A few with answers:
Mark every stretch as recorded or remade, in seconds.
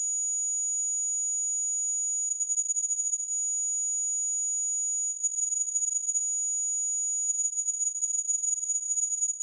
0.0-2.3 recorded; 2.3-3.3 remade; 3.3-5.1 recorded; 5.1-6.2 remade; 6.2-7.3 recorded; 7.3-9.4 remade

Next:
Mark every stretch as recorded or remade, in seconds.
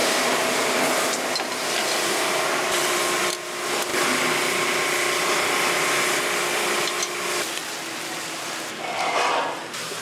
0.0-10.0 recorded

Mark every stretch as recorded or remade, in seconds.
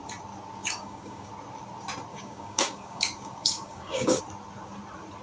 0.0-0.6 recorded; 0.6-1.3 remade; 1.3-2.1 recorded; 2.1-4.2 remade; 4.2-5.2 recorded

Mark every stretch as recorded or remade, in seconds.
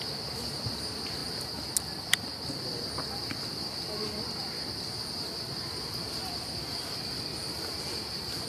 0.0-8.5 recorded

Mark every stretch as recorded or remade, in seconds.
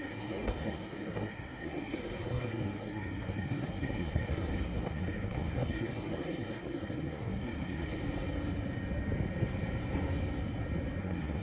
0.0-8.0 remade; 8.0-11.0 recorded; 11.0-11.4 remade